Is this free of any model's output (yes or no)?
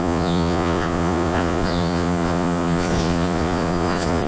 no